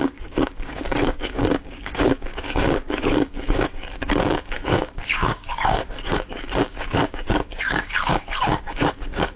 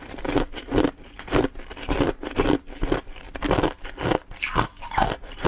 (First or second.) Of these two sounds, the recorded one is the second